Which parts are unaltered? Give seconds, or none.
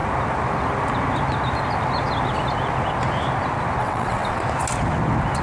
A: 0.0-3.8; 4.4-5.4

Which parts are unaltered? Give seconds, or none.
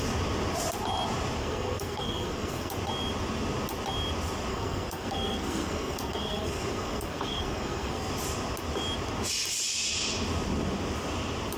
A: 0.0-1.4; 2.7-4.5; 8.1-11.6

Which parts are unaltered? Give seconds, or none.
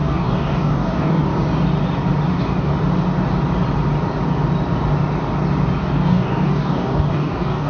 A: 1.3-2.3; 2.7-5.8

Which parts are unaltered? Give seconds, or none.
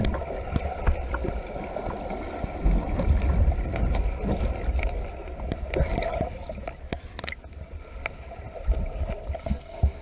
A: 0.0-9.4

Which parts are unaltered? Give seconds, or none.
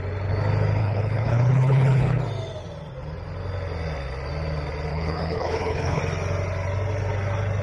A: 0.0-0.8; 2.2-4.9; 6.0-7.6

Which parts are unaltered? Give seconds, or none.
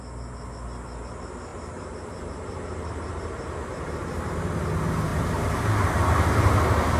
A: 0.0-1.5; 4.3-5.1; 6.5-7.0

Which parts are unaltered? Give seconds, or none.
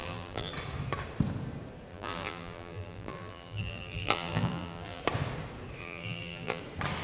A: 0.5-1.9; 5.0-5.8; 6.6-7.0